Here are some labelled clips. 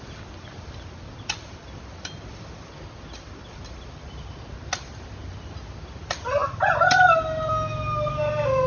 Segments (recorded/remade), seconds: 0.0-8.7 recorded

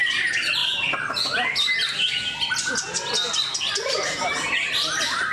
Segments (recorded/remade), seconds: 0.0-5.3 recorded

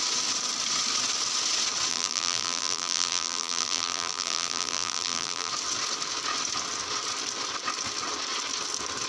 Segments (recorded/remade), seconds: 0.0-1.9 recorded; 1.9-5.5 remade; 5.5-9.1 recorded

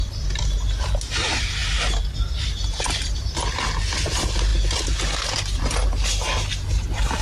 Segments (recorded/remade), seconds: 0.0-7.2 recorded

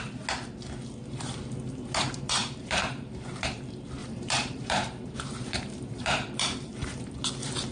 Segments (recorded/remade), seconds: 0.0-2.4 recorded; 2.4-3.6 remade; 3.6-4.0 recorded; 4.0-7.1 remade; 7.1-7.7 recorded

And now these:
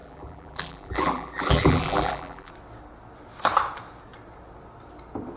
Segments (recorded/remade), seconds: 0.0-2.5 remade; 2.5-5.4 recorded

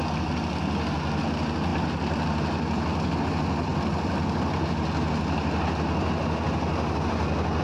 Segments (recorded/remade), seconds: 0.0-1.7 recorded; 1.7-3.2 remade; 3.2-7.6 recorded

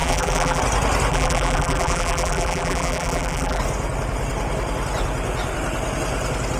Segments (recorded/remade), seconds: 0.0-0.6 remade; 0.6-1.1 recorded; 1.1-3.6 remade; 3.6-6.6 recorded